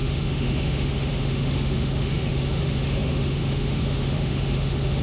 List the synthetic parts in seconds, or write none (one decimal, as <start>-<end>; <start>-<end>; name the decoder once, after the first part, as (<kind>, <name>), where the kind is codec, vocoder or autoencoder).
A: 0.0-5.0 (autoencoder, DAC-VAE)